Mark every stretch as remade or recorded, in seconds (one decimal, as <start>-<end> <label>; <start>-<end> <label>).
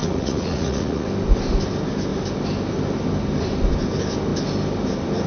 0.0-1.1 remade; 1.1-5.3 recorded